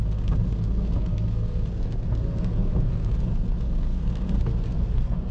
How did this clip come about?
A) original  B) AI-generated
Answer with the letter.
B